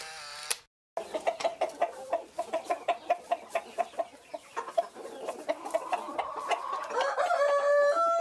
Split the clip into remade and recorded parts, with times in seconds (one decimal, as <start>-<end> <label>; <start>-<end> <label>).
0.0-4.0 recorded; 4.0-6.2 remade; 6.2-6.8 recorded; 6.8-8.2 remade